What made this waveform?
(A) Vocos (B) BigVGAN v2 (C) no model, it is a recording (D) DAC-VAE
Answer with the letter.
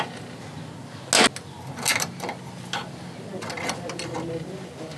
C